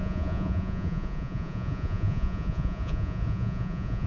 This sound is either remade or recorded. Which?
remade